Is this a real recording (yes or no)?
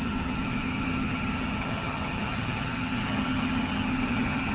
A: no